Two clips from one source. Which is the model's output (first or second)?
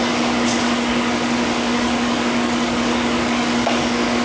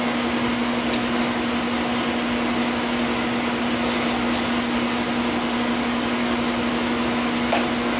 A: first